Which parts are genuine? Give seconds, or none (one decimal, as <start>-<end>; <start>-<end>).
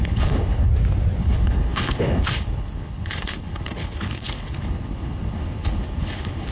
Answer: 0.7-1.2